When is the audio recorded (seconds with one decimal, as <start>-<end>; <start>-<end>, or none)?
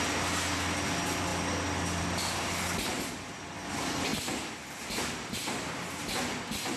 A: 0.0-6.8